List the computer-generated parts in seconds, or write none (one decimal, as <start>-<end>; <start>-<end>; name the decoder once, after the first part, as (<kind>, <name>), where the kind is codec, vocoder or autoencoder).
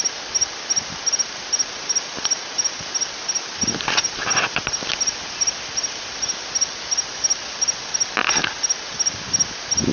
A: none